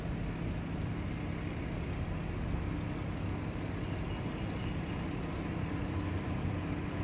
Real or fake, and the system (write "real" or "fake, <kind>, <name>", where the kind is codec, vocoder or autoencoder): real